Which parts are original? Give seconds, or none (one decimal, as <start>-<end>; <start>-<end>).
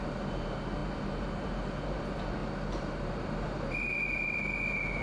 4.4-5.0